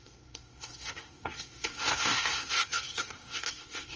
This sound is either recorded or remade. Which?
remade